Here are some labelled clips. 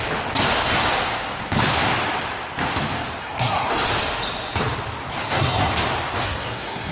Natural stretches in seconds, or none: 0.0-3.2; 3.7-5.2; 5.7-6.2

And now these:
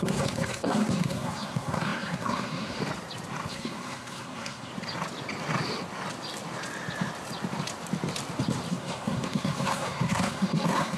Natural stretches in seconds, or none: 2.8-3.5; 4.7-8.7

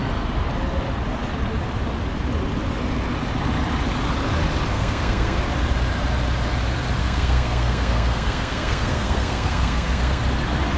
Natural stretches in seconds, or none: 0.0-4.7; 5.4-7.0; 10.2-10.8

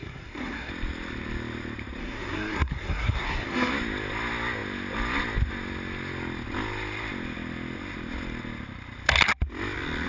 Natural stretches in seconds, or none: 0.7-2.0; 3.7-10.1

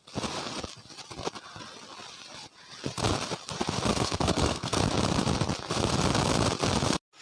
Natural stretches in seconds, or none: 0.0-3.9; 4.8-7.2